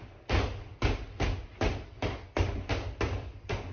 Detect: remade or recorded recorded